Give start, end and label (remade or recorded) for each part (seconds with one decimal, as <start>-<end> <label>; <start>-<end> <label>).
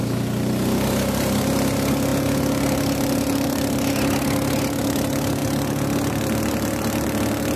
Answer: 0.0-7.6 recorded